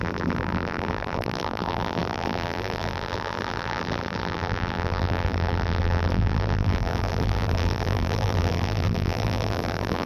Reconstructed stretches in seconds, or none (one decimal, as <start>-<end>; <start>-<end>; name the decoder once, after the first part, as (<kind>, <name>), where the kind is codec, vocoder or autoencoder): 0.0-10.1 (vocoder, BigVGAN v2)

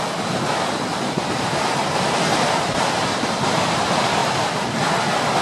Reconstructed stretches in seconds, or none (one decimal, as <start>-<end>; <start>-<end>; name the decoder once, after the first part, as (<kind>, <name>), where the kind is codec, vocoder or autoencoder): 2.3-3.8 (vocoder, BigVGAN v2)

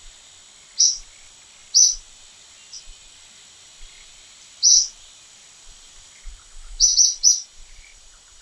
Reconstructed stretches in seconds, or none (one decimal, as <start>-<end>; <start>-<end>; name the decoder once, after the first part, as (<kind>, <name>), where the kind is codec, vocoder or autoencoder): 6.9-8.4 (vocoder, BigVGAN v2)

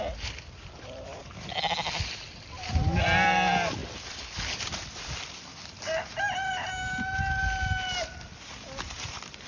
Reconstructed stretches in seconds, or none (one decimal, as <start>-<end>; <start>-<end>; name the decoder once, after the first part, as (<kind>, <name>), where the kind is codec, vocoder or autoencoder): 3.8-5.3 (vocoder, BigVGAN v2)

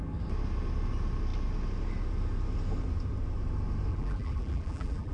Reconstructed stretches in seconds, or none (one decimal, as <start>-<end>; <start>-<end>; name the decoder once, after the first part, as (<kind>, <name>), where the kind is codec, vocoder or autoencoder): 3.9-5.1 (vocoder, BigVGAN v2)

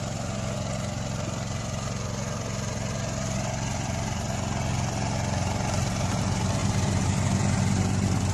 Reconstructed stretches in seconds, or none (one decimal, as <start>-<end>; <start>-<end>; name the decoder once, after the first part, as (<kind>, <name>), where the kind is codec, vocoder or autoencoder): 6.6-7.1 (vocoder, BigVGAN v2)

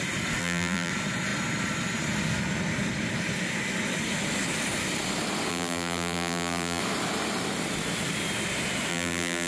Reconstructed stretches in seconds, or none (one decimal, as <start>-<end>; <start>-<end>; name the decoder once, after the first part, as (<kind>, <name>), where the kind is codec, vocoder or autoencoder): 0.4-0.9 (vocoder, BigVGAN v2); 5.5-6.8; 8.9-9.5